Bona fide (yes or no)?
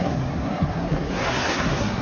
no